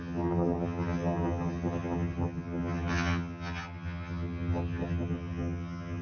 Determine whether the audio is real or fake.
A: fake